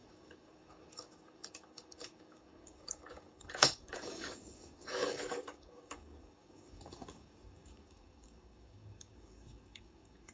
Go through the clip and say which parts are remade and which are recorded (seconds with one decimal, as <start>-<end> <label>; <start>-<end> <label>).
0.0-10.3 remade